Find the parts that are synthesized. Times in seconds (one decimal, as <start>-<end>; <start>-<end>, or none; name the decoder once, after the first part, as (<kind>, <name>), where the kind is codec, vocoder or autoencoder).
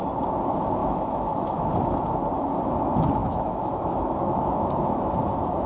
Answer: 0.8-1.7 (autoencoder, DAC-VAE); 3.2-5.1